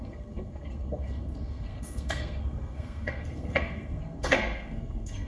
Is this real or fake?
fake